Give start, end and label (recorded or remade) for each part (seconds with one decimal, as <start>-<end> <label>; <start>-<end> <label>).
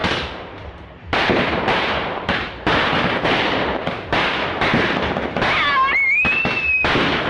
0.0-3.9 remade; 3.9-7.3 recorded